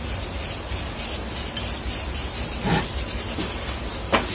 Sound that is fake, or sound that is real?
real